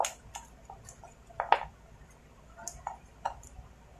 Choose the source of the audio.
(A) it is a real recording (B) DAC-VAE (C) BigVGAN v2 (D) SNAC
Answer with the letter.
A